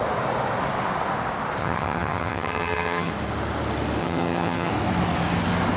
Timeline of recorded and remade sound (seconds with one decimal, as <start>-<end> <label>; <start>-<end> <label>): 0.0-1.6 recorded; 1.6-3.1 remade; 3.1-4.0 recorded; 4.0-4.7 remade; 4.7-5.8 recorded